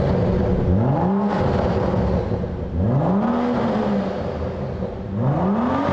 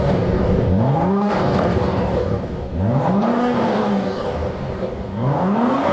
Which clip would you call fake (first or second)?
second